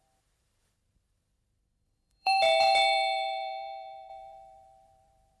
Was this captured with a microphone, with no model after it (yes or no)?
no